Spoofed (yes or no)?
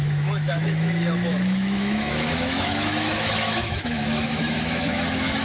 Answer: yes